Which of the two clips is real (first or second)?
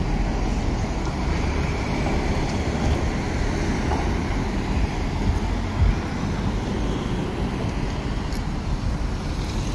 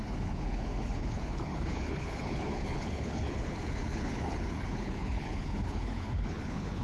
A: first